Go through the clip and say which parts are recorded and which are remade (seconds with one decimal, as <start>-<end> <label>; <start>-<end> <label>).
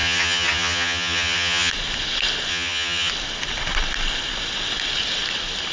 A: 0.0-1.7 remade; 1.7-2.5 recorded; 2.5-3.1 remade; 3.1-5.7 recorded